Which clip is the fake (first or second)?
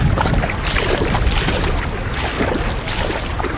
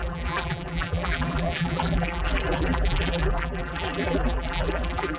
second